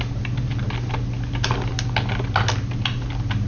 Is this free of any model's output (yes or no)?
yes